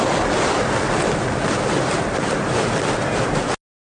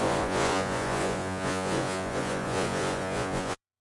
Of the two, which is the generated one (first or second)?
second